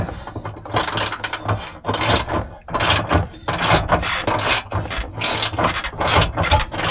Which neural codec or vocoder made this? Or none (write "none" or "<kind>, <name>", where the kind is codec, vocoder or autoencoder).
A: none